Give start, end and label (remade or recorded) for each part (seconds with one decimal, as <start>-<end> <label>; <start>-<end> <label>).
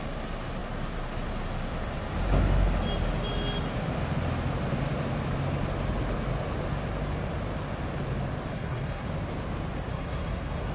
0.0-8.5 recorded; 8.5-9.1 remade; 9.1-9.9 recorded; 9.9-10.7 remade